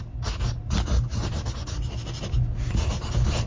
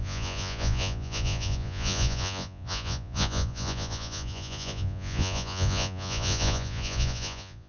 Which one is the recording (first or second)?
first